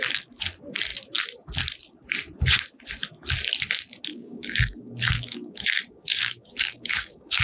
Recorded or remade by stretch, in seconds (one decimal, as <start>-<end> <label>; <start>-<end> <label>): 0.0-4.1 recorded; 4.1-7.4 remade